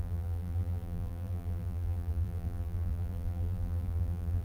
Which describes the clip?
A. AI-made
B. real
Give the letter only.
A